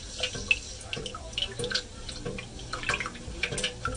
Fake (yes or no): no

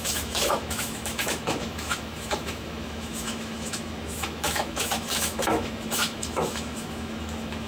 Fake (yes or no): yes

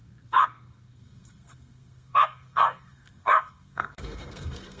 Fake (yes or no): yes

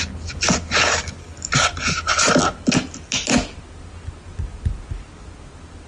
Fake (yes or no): no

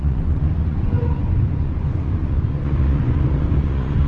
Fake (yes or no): yes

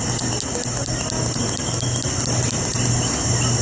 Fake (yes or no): yes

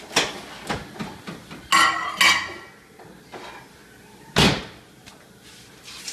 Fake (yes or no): no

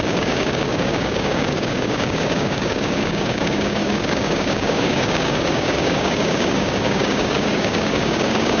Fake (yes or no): yes